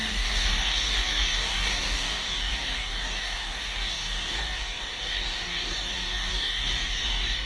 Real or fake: fake